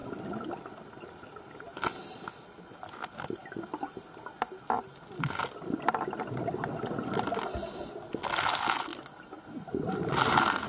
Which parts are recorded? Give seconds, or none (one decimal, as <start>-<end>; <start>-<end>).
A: 0.0-10.7